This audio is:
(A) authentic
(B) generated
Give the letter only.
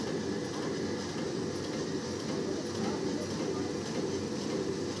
A